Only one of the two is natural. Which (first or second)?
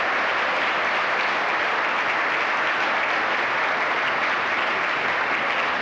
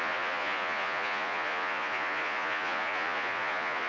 first